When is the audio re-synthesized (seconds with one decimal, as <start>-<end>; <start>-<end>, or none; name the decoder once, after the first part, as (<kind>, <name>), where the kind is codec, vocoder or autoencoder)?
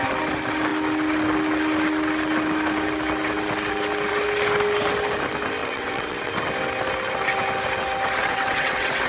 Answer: 5.6-6.3 (vocoder, WaveNeXt); 8.2-9.1